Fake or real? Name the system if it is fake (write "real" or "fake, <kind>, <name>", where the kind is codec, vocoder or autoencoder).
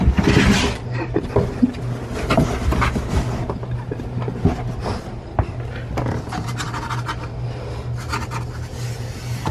real